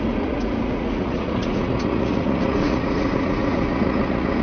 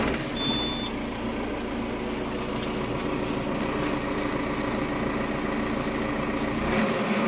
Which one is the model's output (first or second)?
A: first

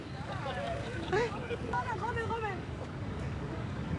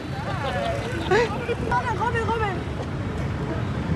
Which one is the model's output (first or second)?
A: first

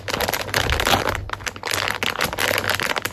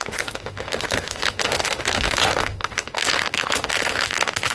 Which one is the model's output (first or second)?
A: second